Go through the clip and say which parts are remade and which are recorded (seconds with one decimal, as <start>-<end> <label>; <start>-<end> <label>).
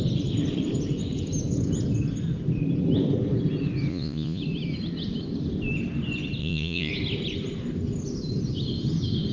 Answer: 0.0-3.9 recorded; 3.9-4.4 remade; 4.4-6.4 recorded; 6.4-6.9 remade; 6.9-9.3 recorded